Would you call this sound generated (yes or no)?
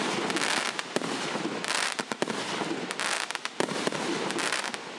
no